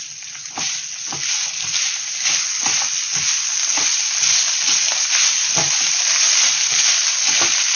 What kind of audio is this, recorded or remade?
recorded